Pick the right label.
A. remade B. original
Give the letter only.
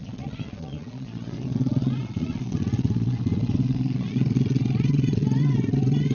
A